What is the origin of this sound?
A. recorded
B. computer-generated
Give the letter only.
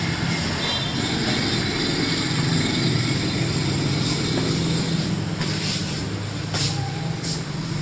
A